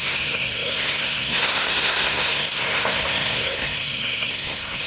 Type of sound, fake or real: fake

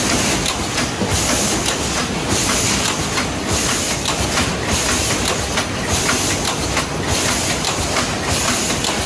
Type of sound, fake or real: real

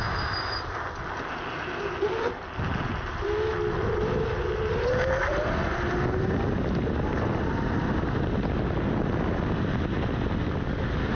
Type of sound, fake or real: real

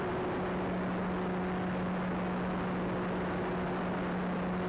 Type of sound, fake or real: real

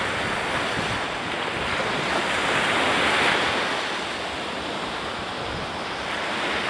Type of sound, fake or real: real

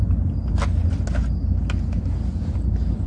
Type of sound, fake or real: real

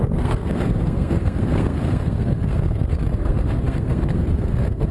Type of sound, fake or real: fake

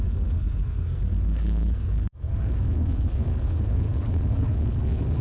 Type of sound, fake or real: fake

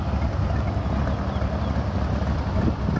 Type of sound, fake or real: real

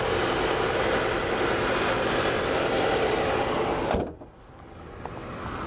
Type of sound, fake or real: real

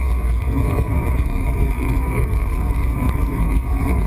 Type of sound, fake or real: fake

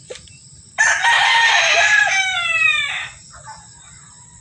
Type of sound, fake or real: real